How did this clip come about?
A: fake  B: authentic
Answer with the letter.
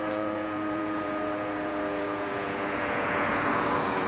A